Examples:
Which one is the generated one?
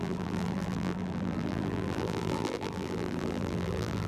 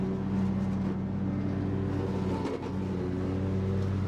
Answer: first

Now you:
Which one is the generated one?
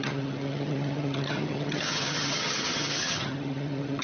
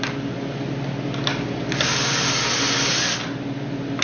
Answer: first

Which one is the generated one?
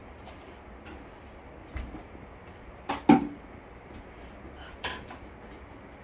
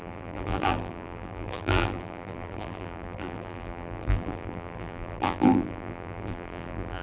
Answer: second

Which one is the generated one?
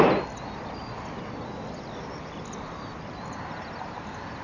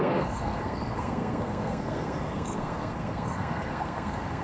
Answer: second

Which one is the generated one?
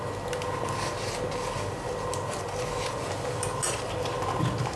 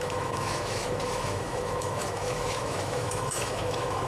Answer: second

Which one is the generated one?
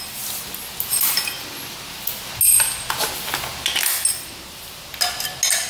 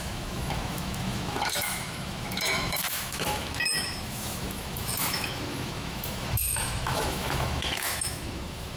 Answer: second